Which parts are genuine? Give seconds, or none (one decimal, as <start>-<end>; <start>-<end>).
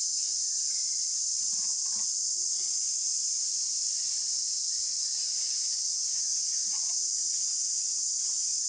0.0-0.8; 1.5-3.1; 5.4-6.9; 7.4-8.7